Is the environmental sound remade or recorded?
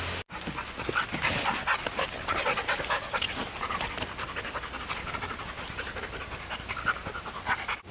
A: recorded